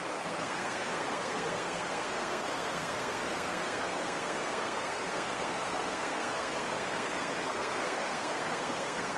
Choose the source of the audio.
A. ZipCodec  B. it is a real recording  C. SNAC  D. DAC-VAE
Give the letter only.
C